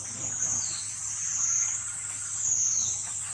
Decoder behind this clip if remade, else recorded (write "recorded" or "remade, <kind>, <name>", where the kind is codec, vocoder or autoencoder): recorded